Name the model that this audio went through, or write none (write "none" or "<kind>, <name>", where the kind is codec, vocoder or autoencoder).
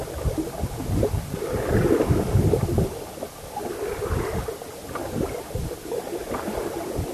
none